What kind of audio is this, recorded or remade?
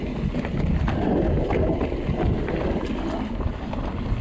recorded